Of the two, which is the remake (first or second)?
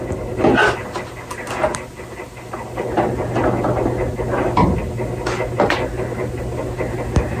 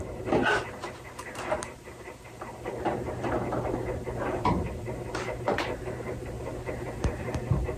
second